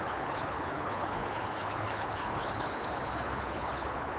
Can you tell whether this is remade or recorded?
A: remade